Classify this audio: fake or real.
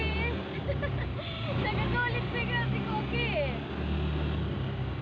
real